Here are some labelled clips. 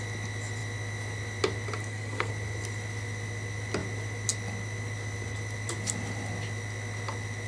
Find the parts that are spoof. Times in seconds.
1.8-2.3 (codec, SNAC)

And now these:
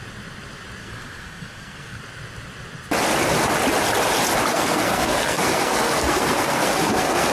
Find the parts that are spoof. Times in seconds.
0.8-2.0 (codec, SNAC); 4.5-7.3